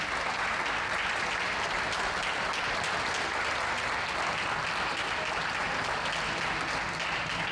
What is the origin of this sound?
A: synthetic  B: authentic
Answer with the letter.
B